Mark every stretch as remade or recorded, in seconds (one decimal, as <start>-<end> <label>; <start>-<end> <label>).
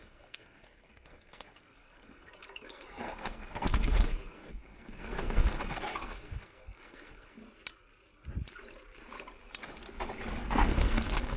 0.0-7.4 remade; 7.4-10.4 recorded; 10.4-11.4 remade